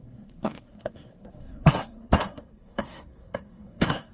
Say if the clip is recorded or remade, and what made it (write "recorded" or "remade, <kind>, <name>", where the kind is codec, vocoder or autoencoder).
remade, codec, SNAC